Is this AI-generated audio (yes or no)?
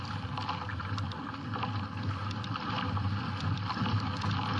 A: no